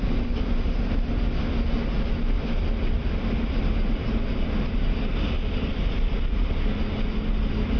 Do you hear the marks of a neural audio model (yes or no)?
no